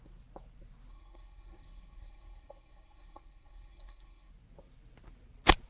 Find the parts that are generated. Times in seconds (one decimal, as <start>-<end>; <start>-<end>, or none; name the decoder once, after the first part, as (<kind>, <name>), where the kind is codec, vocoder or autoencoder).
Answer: 0.9-4.3 (codec, SNAC)